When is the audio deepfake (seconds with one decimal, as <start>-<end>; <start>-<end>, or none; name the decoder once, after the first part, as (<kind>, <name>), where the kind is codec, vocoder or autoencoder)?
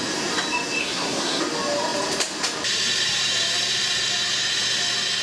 0.8-1.4 (codec, SNAC)